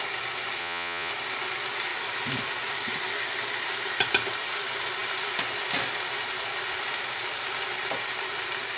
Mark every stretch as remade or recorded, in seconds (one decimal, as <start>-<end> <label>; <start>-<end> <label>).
0.0-0.6 recorded; 0.6-1.1 remade; 1.1-8.8 recorded